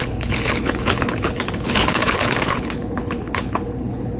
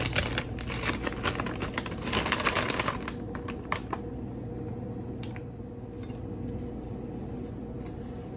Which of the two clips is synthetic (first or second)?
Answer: first